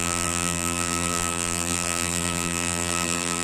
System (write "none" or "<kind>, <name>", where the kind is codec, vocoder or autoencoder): vocoder, BigVGAN v2